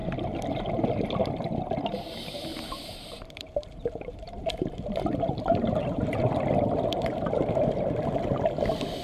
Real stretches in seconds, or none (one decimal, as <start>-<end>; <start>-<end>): 0.0-2.5; 6.2-7.0; 7.6-9.0

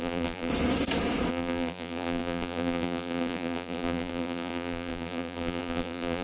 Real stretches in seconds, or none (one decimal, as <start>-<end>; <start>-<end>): 0.5-1.3

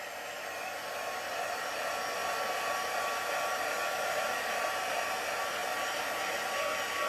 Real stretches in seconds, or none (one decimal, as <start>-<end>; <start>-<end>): 0.0-5.6; 6.2-7.1

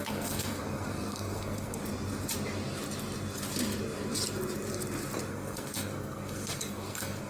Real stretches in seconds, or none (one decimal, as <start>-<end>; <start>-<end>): 1.8-5.3

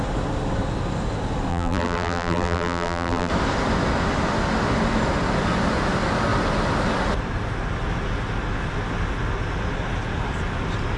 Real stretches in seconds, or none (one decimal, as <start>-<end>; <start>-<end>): 0.0-1.5; 3.3-11.0

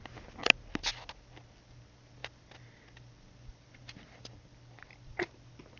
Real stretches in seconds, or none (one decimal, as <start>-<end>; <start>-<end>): 0.0-2.2

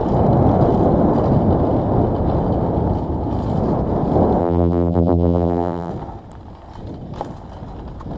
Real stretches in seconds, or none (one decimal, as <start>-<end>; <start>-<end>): 0.0-4.4; 5.9-8.2